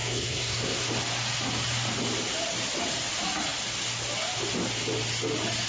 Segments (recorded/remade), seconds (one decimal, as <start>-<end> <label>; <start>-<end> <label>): 0.0-0.9 remade; 0.9-5.7 recorded